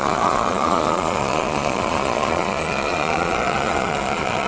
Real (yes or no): no